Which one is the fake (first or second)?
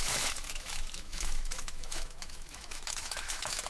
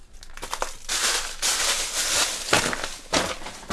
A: first